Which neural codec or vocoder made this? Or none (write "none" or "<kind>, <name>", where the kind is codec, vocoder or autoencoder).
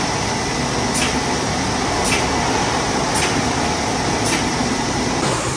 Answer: none